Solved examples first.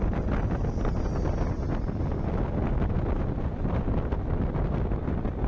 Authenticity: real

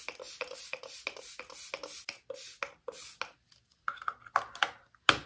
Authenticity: real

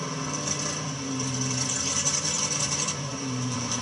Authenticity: fake